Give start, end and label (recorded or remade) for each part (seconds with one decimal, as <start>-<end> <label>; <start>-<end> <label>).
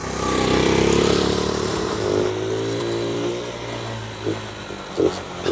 0.0-3.3 remade; 3.3-5.5 recorded